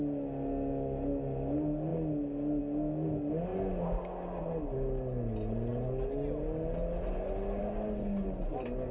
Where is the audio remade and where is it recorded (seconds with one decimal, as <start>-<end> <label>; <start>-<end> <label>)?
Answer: 0.0-8.9 recorded